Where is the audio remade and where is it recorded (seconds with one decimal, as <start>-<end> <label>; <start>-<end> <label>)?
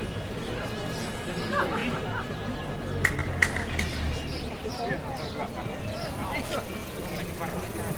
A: 0.0-1.8 recorded; 1.8-2.7 remade; 2.7-8.0 recorded